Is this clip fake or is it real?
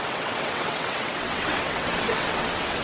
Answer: fake